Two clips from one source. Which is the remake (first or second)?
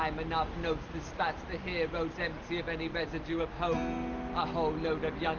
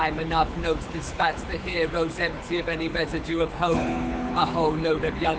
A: second